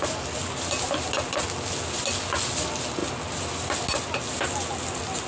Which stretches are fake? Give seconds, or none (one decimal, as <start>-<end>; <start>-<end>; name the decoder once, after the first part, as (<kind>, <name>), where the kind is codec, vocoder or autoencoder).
none